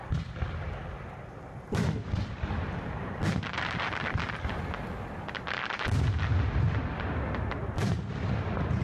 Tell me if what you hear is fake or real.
real